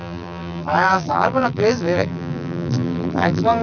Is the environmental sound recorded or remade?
remade